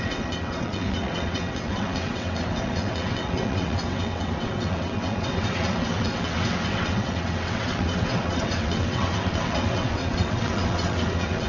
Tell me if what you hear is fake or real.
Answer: fake